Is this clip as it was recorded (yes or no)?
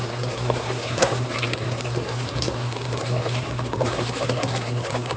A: no